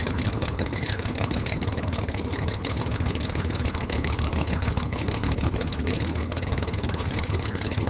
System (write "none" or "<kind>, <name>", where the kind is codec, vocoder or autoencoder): codec, HILCodec